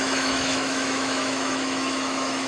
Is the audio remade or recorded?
remade